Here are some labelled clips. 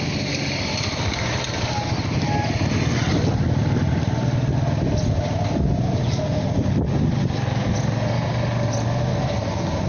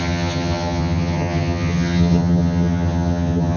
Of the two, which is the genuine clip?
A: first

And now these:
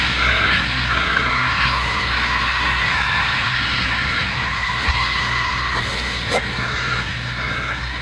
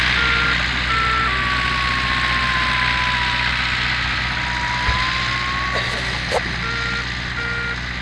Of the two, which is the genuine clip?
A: second